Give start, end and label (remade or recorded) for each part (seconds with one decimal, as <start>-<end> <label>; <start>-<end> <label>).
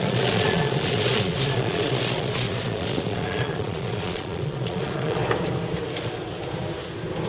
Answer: 0.0-5.2 remade; 5.2-7.3 recorded